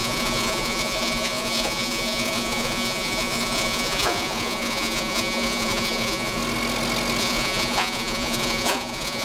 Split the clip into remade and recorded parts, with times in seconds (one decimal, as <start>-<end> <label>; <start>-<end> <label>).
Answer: 0.0-6.4 remade; 6.4-7.2 recorded; 7.2-9.2 remade